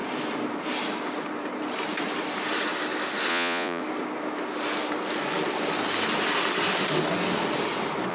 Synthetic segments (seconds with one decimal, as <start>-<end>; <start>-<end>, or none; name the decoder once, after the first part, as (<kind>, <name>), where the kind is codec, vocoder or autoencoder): 3.3-3.8 (vocoder, Vocos)